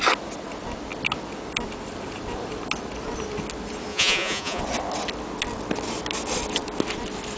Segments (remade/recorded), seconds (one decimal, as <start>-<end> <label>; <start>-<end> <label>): 0.0-3.9 recorded; 3.9-4.6 remade; 4.6-7.4 recorded

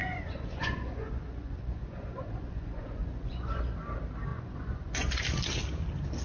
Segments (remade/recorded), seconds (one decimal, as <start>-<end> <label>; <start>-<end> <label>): 0.0-3.7 remade; 3.7-4.3 recorded; 4.3-5.1 remade; 5.1-6.2 recorded

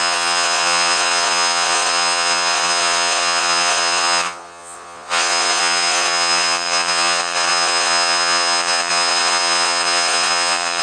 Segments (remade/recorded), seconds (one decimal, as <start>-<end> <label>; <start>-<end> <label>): 0.0-10.8 remade

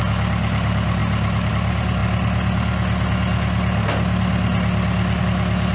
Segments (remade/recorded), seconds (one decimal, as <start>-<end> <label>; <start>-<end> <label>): 0.0-5.7 recorded

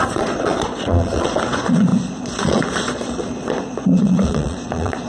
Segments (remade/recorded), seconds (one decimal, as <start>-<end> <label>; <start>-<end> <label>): 0.0-5.1 remade

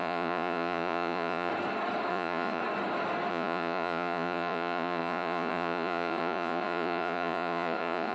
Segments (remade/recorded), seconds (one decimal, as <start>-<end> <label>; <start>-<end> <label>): 0.0-1.5 remade; 1.5-2.1 recorded; 2.1-2.6 remade; 2.6-3.3 recorded; 3.3-8.1 remade

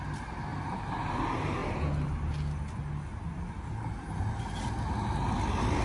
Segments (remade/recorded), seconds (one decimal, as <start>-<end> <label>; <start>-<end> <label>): 0.0-5.8 recorded